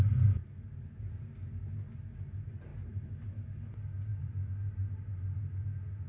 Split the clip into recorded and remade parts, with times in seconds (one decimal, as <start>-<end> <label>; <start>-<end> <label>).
0.0-6.1 recorded